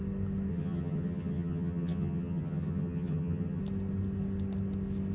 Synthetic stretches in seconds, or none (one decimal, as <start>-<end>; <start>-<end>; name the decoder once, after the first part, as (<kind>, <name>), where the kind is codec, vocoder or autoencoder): 0.5-3.6 (vocoder, HiFi-GAN)